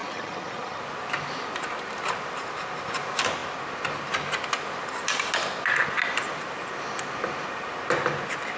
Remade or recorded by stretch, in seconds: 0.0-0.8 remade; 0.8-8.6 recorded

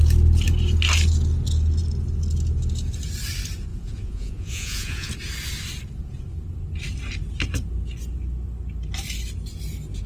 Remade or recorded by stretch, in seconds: 0.0-3.7 recorded; 3.7-5.1 remade; 5.1-10.1 recorded

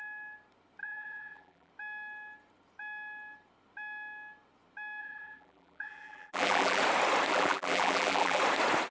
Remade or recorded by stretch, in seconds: 0.0-0.8 recorded; 0.8-1.7 remade; 1.7-5.0 recorded; 5.0-6.8 remade; 6.8-7.3 recorded; 7.3-8.4 remade; 8.4-8.9 recorded

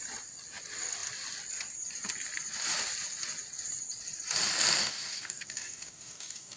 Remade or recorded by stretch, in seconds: 0.0-4.8 recorded; 4.8-6.6 remade

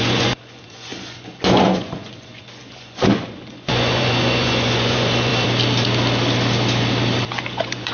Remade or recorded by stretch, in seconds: 0.0-5.3 remade; 5.3-7.3 recorded; 7.3-7.9 remade